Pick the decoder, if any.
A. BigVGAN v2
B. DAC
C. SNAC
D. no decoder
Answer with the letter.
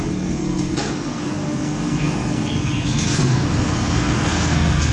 C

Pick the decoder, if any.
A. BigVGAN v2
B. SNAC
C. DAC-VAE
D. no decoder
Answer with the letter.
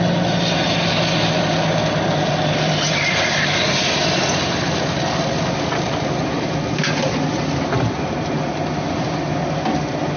A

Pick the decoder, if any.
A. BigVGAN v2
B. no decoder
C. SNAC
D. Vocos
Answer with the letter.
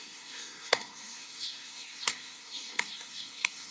C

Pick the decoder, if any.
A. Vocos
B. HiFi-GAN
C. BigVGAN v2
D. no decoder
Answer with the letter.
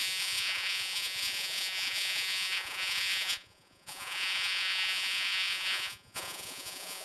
A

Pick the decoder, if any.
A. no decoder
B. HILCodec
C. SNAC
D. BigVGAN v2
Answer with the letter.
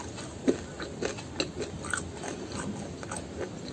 A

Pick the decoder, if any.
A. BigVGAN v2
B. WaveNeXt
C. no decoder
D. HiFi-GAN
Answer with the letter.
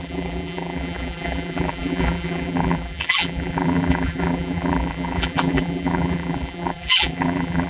A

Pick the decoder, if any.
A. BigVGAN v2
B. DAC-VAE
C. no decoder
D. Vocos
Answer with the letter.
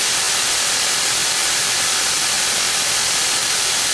A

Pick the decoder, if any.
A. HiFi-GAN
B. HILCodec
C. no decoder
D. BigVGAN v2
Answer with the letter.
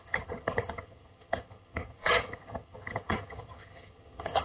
A